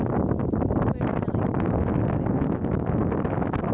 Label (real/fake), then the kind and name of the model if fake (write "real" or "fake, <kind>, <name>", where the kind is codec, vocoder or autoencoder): real